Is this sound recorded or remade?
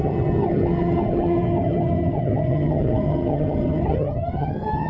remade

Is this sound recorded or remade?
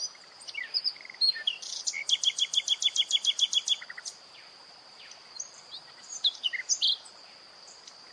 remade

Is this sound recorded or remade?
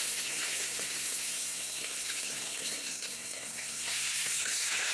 remade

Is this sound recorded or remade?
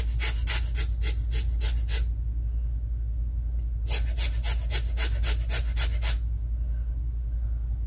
recorded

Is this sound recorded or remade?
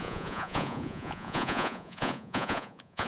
remade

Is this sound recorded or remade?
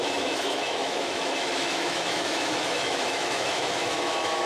remade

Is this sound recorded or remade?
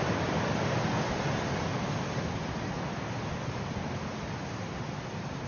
recorded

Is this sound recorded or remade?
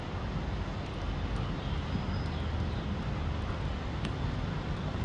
recorded